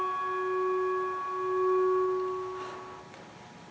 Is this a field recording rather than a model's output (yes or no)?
yes